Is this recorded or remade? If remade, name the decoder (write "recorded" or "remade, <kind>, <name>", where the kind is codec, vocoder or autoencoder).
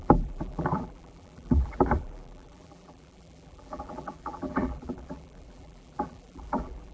remade, vocoder, BigVGAN v2